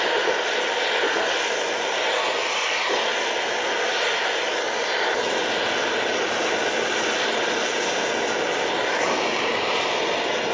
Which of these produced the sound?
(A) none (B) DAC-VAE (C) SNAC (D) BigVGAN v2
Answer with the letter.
A